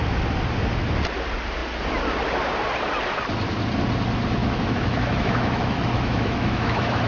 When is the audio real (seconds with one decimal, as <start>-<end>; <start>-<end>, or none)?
0.0-4.4